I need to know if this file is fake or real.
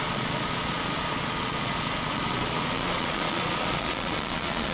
fake